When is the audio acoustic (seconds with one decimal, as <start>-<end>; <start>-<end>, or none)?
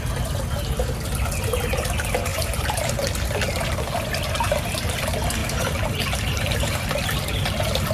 0.0-2.3; 2.9-5.4; 7.3-7.9